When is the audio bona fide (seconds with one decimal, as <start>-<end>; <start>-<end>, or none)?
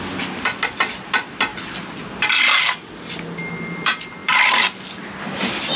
0.0-5.8